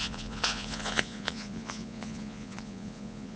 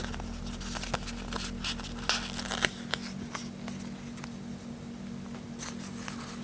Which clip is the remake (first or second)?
first